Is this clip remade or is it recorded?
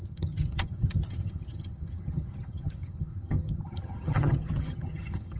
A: remade